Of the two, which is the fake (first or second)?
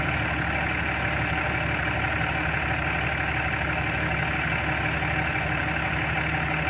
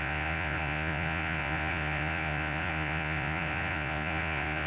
second